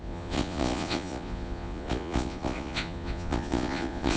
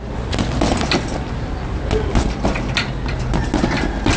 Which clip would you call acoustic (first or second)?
second